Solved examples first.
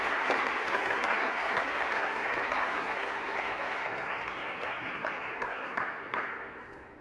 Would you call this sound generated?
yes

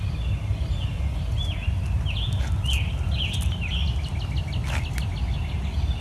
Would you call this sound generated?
no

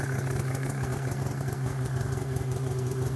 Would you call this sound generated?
yes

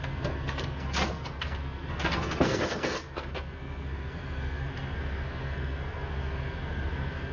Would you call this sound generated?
yes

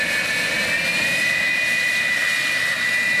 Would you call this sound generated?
no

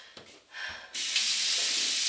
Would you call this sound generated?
no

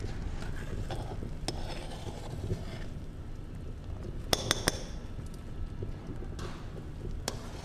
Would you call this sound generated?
no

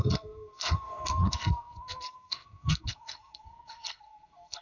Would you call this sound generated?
yes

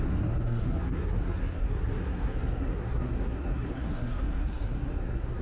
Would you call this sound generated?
yes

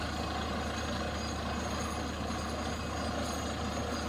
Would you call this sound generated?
no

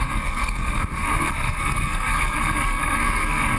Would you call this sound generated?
yes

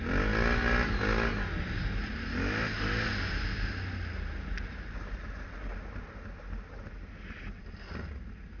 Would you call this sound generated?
no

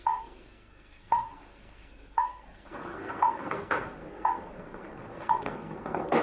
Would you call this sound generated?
yes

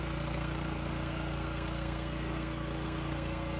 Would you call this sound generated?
yes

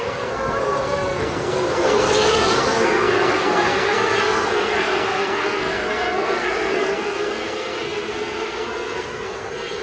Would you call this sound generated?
yes